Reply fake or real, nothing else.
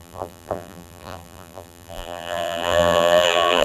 fake